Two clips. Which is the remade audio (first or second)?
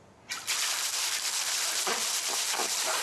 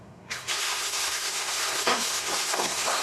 second